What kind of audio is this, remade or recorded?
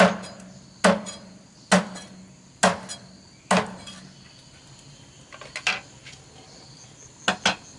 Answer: recorded